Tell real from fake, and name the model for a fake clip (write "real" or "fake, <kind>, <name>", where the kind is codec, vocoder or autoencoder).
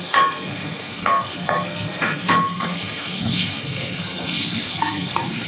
fake, codec, SNAC